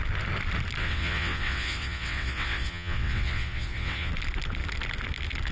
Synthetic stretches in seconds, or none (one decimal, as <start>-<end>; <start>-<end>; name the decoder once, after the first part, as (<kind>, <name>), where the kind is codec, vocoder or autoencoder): 0.8-4.1 (vocoder, WaveNeXt)